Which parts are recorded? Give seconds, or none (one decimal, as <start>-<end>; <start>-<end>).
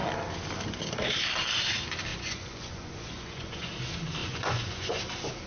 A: 0.0-2.1; 3.7-4.2; 5.0-5.5